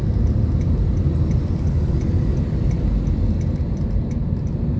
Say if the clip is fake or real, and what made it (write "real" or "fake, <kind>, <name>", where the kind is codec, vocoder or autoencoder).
real